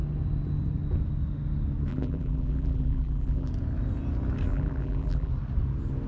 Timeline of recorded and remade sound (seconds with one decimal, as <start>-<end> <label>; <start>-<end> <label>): 0.0-1.9 recorded; 1.9-3.5 remade; 3.5-4.5 recorded; 4.5-5.3 remade; 5.3-6.1 recorded